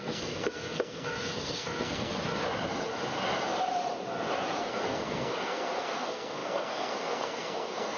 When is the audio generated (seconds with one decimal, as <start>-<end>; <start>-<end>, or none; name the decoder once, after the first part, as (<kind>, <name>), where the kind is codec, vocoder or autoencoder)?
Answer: 0.0-2.1 (codec, SNAC); 4.6-8.0